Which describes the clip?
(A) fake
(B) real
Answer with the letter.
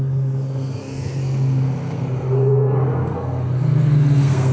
A